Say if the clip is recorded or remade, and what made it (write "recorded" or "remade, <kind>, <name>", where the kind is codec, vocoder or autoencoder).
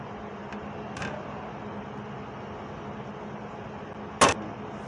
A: recorded